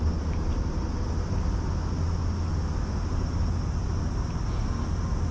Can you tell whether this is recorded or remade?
recorded